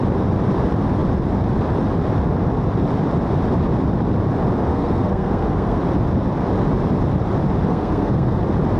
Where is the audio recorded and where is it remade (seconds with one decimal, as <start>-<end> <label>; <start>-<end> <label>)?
0.0-4.7 recorded; 4.7-5.8 remade; 5.8-7.7 recorded; 7.7-8.4 remade; 8.4-8.8 recorded